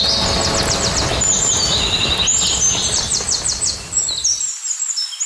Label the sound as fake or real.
real